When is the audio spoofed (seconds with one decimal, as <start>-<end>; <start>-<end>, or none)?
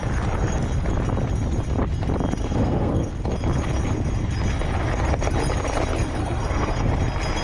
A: 2.4-3.1; 6.2-6.9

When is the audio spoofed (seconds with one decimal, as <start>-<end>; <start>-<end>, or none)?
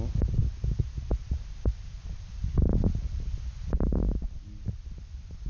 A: none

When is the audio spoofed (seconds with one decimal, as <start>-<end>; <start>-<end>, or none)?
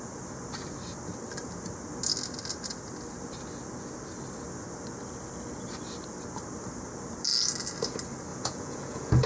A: 8.3-9.3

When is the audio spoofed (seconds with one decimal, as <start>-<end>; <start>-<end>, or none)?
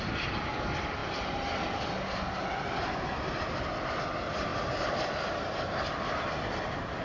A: none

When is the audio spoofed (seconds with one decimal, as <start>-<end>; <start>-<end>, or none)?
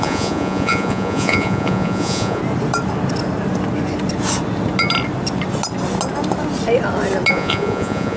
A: 0.0-2.4; 7.3-8.2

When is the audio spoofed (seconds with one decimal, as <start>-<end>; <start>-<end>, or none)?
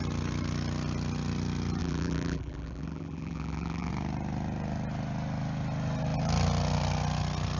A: 1.8-3.9